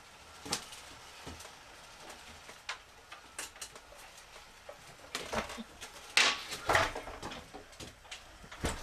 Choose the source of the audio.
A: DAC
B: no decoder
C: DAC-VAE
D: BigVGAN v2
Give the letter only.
B